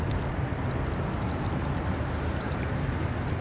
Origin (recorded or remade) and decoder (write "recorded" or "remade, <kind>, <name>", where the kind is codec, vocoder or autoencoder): recorded